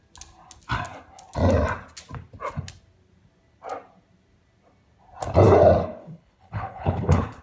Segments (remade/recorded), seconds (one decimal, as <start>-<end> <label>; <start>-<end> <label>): 0.0-6.0 recorded; 6.0-7.4 remade